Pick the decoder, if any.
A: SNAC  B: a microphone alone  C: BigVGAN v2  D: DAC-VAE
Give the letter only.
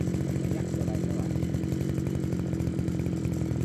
B